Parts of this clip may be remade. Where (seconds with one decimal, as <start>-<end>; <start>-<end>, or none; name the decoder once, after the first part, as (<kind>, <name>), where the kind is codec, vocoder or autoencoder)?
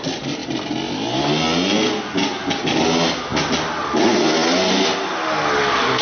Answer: none